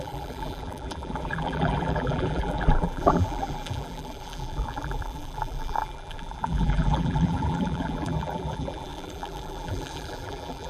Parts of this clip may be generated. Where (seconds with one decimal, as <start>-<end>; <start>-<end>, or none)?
0.0-10.7